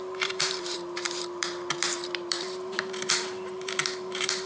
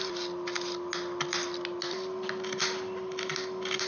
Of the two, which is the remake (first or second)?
first